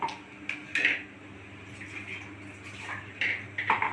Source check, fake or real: real